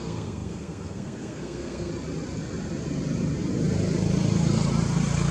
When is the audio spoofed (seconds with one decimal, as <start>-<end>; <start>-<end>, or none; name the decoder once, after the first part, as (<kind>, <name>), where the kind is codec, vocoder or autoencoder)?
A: 0.0-1.9 (codec, SNAC)